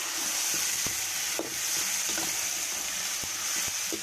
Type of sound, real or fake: real